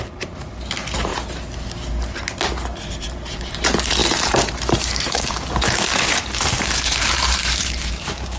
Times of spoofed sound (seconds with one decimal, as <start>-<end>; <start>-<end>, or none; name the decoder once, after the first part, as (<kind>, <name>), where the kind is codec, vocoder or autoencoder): 0.0-1.1 (vocoder, BigVGAN v2); 2.8-8.4